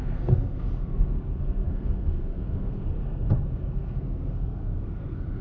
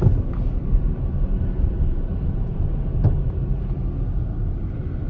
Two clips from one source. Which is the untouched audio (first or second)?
second